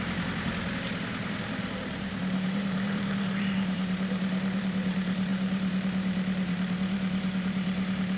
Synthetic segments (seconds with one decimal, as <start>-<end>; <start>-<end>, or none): 0.0-8.2